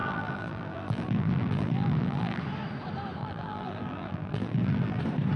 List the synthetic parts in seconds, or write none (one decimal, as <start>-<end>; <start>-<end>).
0.0-2.4; 3.2-5.0